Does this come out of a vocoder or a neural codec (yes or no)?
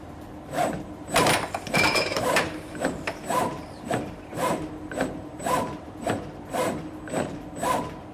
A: yes